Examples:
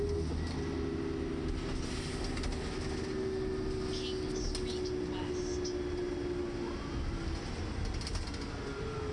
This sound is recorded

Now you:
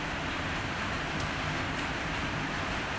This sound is remade